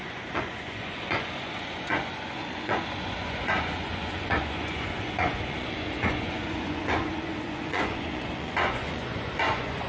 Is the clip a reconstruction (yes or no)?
yes